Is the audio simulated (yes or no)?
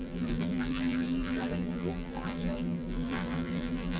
yes